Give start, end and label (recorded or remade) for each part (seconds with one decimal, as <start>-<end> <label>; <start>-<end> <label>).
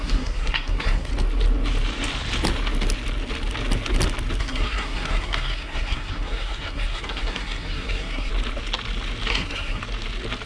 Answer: 0.0-1.1 remade; 1.1-4.4 recorded; 4.4-8.3 remade; 8.3-9.3 recorded; 9.3-9.8 remade; 9.8-10.5 recorded